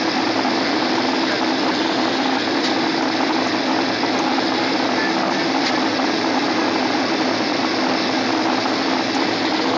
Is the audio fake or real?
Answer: real